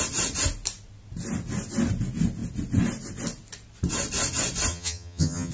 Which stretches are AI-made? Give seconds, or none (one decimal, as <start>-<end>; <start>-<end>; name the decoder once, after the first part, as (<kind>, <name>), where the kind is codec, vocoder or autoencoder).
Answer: 4.7-5.5 (vocoder, HiFi-GAN)